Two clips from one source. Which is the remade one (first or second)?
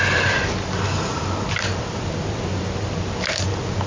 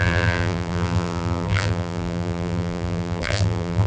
second